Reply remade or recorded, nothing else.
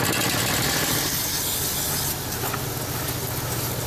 recorded